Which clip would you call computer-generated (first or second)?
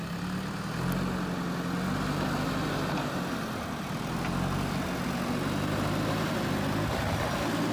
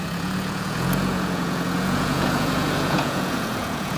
second